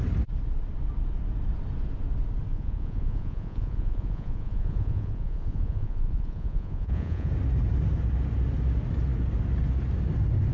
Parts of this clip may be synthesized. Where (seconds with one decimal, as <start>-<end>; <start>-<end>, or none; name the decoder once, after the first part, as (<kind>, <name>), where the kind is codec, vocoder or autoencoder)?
2.5-7.3 (vocoder, Vocos)